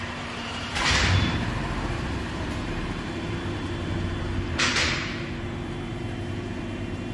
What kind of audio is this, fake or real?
fake